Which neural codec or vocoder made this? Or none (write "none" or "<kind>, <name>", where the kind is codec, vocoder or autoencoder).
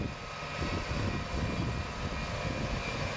none